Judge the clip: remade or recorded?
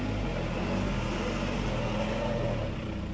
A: recorded